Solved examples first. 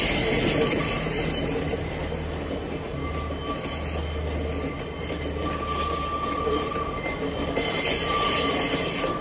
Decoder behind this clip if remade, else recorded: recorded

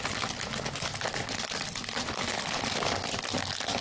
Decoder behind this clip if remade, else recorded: recorded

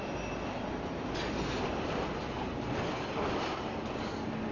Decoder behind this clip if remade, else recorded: recorded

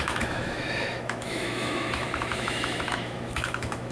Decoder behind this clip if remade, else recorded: remade, autoencoder, DAC-VAE